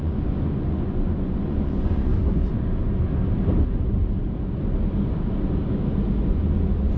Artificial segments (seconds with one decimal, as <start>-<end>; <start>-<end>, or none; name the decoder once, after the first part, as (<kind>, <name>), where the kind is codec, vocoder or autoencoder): 0.0-2.1 (vocoder, Vocos); 6.3-7.0